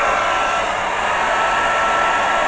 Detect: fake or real real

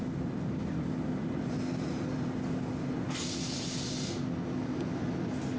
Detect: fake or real real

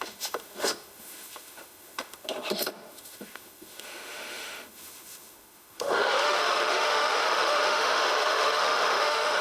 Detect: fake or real fake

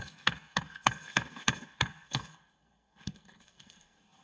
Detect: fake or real fake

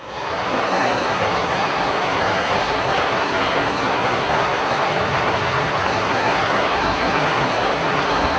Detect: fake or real fake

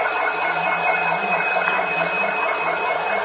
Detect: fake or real real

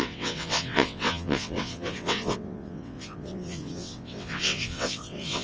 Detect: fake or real fake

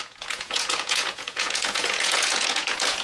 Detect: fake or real fake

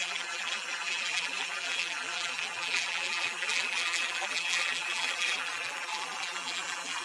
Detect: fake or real fake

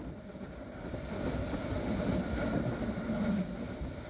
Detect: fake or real real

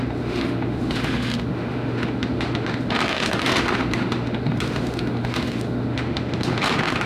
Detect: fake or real fake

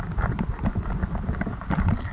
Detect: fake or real real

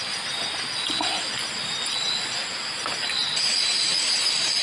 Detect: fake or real real